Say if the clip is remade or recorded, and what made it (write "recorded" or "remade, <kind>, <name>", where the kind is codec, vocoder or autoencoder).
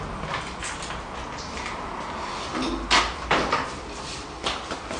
recorded